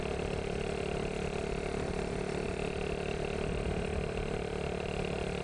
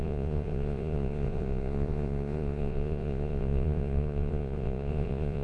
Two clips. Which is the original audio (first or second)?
first